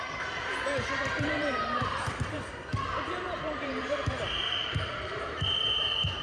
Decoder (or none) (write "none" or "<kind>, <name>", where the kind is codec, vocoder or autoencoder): vocoder, BigVGAN v2